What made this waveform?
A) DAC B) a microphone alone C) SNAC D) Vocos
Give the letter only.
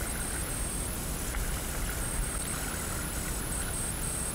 B